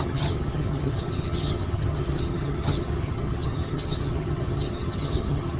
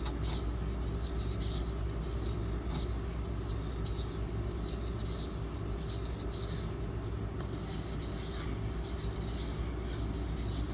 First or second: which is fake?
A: first